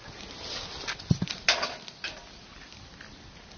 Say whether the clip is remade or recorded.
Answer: recorded